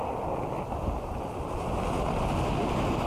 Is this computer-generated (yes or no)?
no